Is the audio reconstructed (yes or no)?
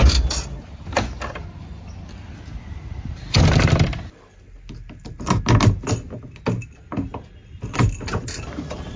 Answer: no